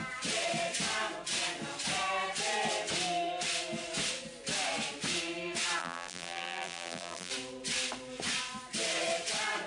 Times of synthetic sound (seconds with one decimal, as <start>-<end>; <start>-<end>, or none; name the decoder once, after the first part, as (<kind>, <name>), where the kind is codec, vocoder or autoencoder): 5.8-7.3 (vocoder, BigVGAN v2)